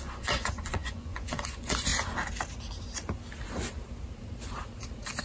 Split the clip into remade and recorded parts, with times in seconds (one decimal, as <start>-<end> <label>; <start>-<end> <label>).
0.0-1.9 remade; 1.9-5.2 recorded